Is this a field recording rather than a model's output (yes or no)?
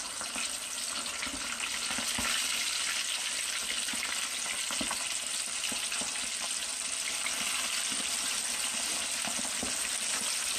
yes